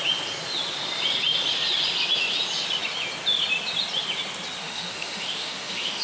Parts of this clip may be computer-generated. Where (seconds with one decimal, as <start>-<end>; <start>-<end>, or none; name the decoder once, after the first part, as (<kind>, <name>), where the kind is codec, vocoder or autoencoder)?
4.6-6.0 (autoencoder, DAC-VAE)

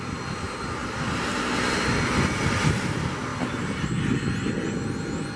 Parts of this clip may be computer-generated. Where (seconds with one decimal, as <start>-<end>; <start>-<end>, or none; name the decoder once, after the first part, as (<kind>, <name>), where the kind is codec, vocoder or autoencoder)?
none

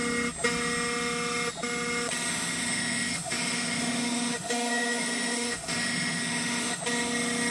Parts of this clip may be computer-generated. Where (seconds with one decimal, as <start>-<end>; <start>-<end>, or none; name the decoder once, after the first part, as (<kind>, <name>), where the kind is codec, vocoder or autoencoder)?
2.3-6.8 (autoencoder, DAC-VAE)

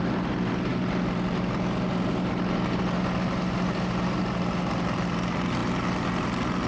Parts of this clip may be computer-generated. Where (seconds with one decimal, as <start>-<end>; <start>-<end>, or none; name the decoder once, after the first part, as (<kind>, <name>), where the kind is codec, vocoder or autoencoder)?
none